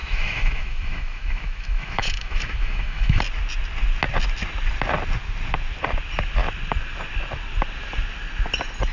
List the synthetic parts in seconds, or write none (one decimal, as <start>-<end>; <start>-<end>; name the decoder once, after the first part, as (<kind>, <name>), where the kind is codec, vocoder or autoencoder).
0.0-3.2 (autoencoder, DAC-VAE)